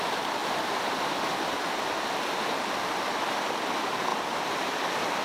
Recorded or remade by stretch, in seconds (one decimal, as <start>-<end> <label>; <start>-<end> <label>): 0.0-5.2 recorded